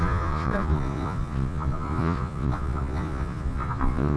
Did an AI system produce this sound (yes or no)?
yes